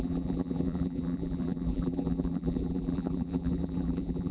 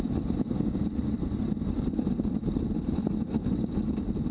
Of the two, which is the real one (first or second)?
second